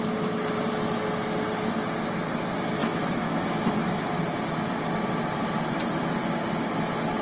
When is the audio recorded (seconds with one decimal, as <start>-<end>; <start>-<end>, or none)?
0.0-2.8; 4.1-7.2